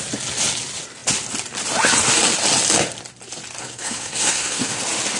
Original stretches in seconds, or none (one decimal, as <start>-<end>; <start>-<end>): 0.0-3.6; 4.8-5.2